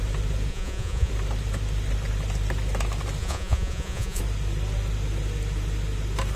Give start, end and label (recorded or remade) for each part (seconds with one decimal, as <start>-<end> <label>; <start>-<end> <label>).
0.0-0.5 recorded; 0.5-1.1 remade; 1.1-3.2 recorded; 3.2-4.2 remade; 4.2-6.4 recorded